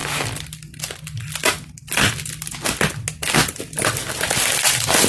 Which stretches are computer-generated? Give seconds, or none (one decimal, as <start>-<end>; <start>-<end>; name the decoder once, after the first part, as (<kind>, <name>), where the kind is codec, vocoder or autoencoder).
none